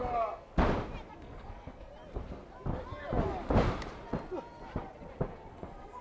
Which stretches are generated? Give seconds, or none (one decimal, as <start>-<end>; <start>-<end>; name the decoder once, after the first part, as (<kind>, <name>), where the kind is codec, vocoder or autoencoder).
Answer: 0.0-0.5 (codec, SNAC); 1.1-1.9; 5.5-6.0